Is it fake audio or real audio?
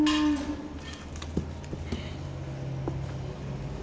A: real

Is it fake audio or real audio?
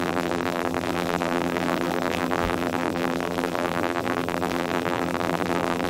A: fake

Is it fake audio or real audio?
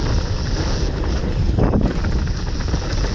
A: real